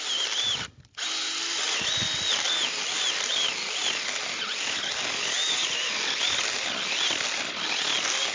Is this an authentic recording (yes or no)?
yes